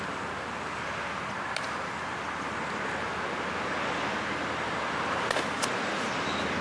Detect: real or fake real